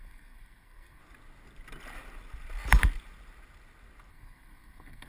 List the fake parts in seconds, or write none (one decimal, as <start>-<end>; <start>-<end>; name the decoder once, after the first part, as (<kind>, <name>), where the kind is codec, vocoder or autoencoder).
0.0-1.0 (codec, SNAC); 4.1-5.1